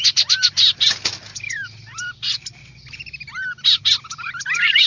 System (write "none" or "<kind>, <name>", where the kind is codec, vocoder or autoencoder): none